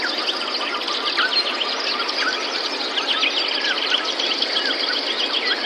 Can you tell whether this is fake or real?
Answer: real